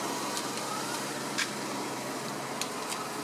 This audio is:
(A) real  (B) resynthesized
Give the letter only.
B